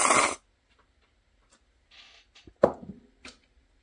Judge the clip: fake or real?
real